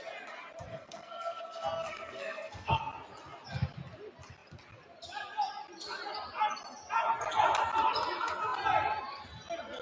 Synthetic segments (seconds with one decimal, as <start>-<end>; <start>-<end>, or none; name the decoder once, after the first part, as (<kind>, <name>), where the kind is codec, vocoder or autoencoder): 0.7-2.8 (codec, SNAC)